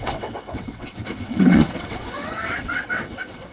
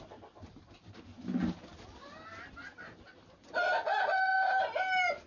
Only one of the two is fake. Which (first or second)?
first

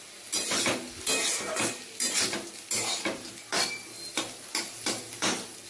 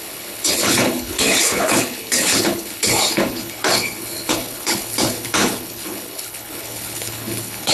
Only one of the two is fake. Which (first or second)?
second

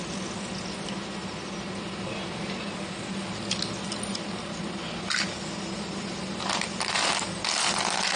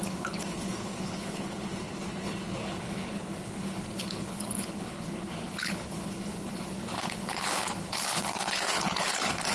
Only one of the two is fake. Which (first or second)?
second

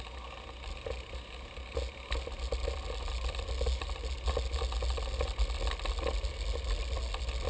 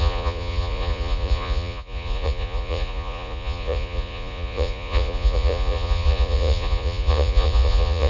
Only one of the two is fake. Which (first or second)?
second